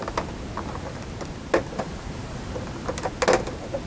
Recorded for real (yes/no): yes